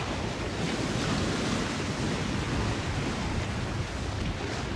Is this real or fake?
real